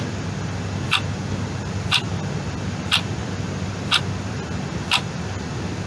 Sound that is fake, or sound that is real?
real